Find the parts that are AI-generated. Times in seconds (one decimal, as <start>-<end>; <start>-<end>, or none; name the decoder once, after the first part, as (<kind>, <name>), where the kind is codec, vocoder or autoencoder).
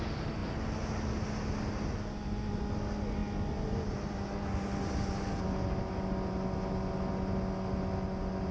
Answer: none